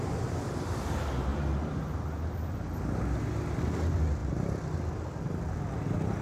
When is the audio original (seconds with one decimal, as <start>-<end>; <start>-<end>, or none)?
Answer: 0.0-6.2